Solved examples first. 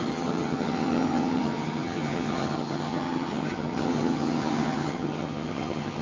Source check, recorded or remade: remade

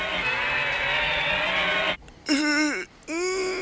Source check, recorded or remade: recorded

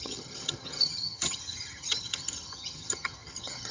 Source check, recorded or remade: remade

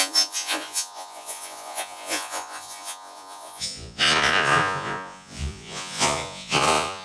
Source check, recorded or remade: remade